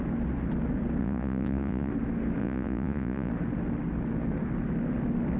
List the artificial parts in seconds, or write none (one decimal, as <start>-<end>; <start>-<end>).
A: 1.0-1.9; 2.4-3.3